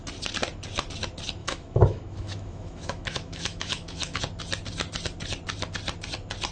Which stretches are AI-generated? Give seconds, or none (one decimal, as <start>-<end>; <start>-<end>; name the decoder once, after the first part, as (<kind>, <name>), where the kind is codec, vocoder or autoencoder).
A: 1.4-4.2 (autoencoder, DAC-VAE)